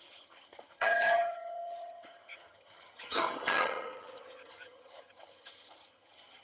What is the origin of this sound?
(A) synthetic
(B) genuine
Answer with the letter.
A